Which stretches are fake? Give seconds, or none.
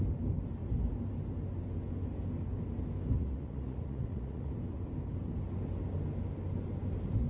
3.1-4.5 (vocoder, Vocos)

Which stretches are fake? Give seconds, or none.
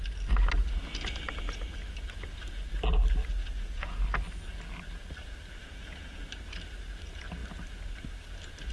3.4-4.0 (vocoder, Vocos); 5.6-6.2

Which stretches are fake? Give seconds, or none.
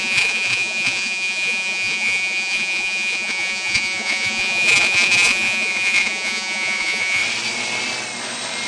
0.0-7.2 (vocoder, Vocos)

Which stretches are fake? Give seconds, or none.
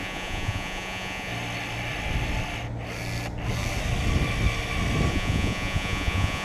0.0-1.3 (vocoder, Vocos); 5.1-6.4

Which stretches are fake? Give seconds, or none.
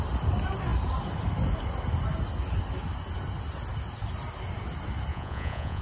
5.1-5.8 (vocoder, Vocos)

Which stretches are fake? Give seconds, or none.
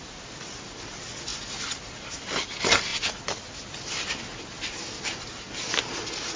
none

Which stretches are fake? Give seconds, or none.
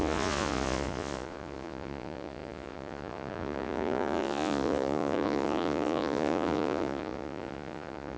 0.0-8.2 (vocoder, Vocos)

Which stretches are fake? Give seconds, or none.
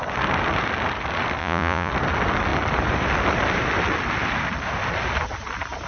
1.4-1.9 (vocoder, Vocos)